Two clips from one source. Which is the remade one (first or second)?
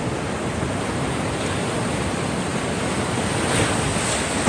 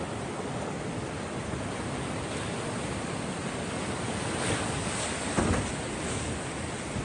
second